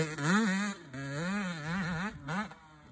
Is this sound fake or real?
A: real